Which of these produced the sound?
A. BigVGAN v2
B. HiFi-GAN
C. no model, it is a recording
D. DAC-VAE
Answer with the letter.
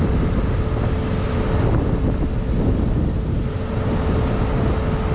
C